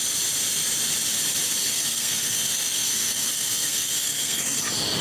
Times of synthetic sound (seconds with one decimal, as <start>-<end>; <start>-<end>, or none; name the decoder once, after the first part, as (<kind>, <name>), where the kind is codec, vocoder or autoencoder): 1.6-4.6 (codec, SNAC)